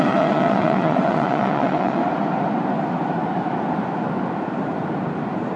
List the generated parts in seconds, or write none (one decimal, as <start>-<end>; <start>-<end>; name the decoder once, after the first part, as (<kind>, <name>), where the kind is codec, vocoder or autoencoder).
0.0-2.0 (vocoder, WaveNeXt)